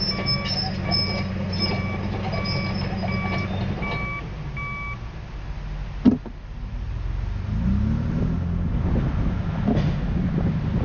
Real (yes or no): yes